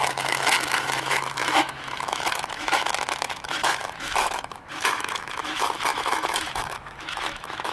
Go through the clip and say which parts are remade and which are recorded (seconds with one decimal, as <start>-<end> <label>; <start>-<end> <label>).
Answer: 0.0-7.7 remade